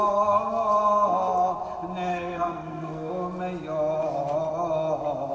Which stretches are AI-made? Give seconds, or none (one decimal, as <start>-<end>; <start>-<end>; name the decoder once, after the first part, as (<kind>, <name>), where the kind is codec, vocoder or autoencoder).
2.1-3.1 (codec, SNAC)